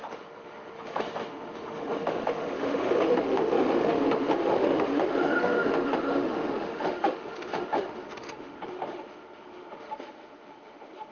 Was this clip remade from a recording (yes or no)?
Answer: yes